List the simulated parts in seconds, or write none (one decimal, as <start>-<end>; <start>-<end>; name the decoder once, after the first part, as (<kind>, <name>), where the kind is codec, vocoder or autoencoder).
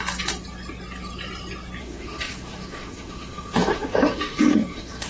1.8-5.1 (autoencoder, DAC-VAE)